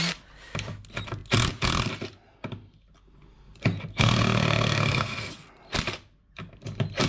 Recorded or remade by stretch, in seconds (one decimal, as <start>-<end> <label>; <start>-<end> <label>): 0.0-3.9 recorded; 3.9-5.3 remade; 5.3-7.1 recorded